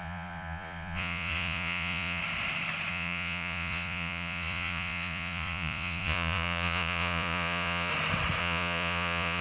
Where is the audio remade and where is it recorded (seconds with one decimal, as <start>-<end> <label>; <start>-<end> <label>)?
0.0-2.2 remade; 2.2-2.9 recorded; 2.9-7.9 remade; 7.9-8.4 recorded; 8.4-9.4 remade